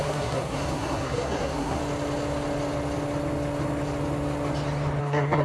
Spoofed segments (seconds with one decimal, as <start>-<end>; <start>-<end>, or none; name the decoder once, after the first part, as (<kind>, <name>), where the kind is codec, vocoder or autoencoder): 0.0-1.8 (codec, SNAC); 5.0-5.4